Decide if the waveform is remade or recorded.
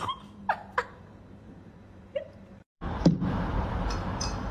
remade